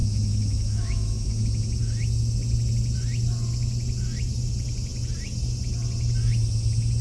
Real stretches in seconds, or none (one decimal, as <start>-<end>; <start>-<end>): 1.4-7.0